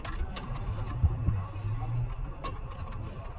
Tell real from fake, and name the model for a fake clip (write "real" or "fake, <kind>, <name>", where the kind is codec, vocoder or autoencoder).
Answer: real